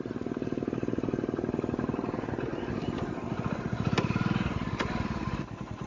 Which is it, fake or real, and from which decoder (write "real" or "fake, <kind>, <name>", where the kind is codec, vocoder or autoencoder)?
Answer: real